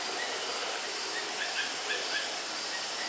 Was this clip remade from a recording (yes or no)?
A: no